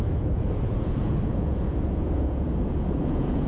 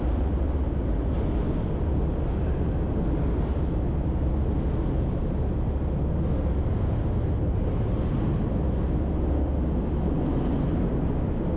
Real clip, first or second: second